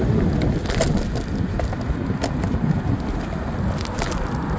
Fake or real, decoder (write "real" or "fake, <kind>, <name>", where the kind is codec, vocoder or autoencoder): real